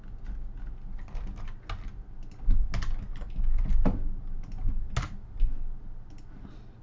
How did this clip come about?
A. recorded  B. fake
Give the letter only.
A